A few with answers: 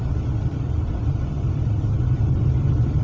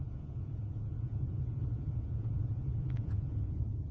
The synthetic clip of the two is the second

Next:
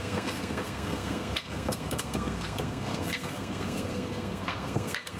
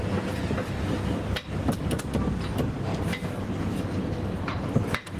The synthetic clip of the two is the first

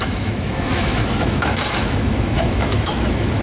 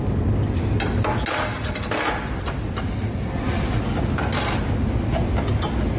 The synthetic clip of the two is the first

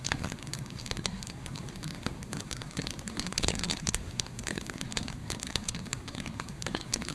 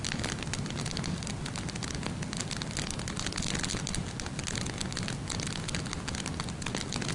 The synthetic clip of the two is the first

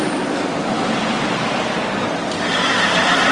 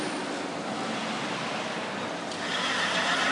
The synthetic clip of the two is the first